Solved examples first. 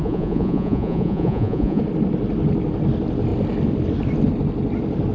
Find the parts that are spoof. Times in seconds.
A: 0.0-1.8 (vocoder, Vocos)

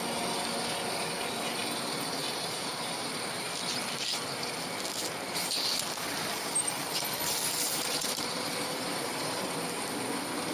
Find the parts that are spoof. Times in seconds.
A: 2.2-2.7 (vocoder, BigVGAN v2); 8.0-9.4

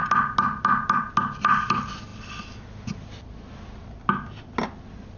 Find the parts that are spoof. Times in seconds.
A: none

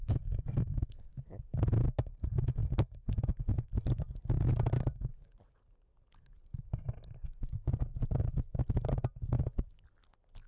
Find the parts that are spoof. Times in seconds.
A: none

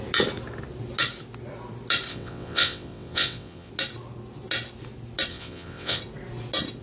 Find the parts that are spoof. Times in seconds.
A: 2.1-3.7 (vocoder, WaveNeXt); 5.3-6.0

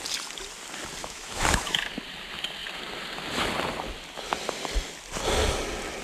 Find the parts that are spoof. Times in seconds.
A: 1.0-1.9 (autoencoder, DAC-VAE)

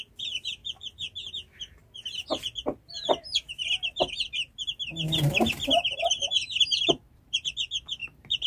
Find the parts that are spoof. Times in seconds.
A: 4.9-7.5 (vocoder, BigVGAN v2); 8.0-8.5